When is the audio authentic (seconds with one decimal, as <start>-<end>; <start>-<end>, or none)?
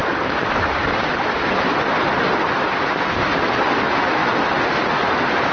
0.8-2.2; 3.2-5.5